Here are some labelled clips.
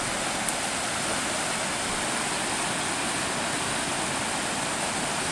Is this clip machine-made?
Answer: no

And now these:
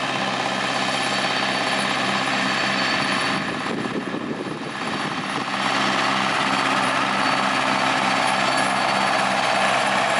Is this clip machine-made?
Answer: no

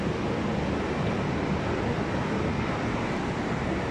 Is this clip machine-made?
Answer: no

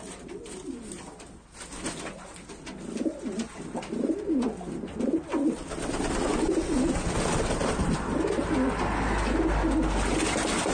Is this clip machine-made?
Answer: no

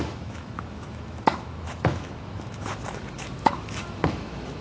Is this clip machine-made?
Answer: yes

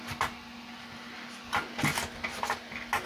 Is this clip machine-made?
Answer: no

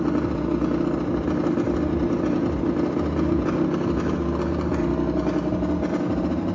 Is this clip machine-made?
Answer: no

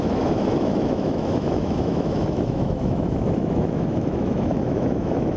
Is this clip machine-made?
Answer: yes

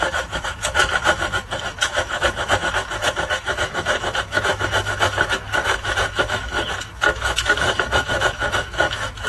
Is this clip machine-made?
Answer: yes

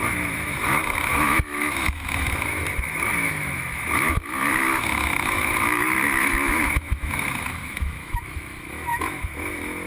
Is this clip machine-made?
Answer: yes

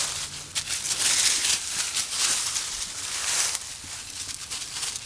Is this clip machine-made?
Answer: no